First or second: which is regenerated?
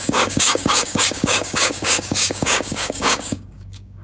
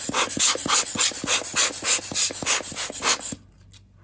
first